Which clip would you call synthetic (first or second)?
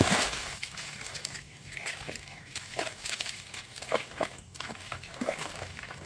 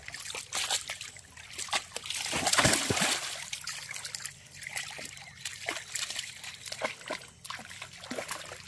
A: first